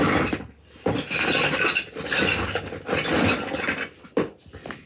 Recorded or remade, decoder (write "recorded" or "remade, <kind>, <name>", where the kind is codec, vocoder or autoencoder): recorded